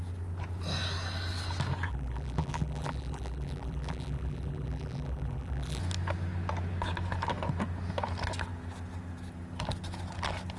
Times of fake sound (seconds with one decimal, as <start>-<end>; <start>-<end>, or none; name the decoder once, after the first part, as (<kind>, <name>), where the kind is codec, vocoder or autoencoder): 1.9-5.8 (vocoder, BigVGAN v2)